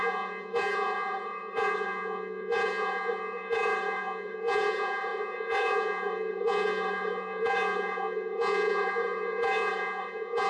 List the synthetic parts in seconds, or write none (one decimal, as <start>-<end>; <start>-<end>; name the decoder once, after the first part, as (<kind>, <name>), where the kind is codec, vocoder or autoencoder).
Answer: 0.0-10.5 (vocoder, Vocos)